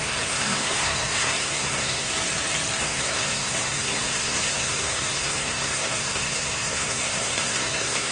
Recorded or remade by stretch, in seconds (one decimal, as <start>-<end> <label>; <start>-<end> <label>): 0.0-2.1 remade; 2.1-2.8 recorded; 2.8-8.1 remade